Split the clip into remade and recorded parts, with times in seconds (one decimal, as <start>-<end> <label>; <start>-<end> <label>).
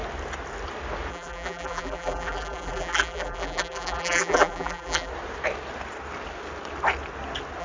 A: 0.0-1.1 recorded; 1.1-5.1 remade; 5.1-7.6 recorded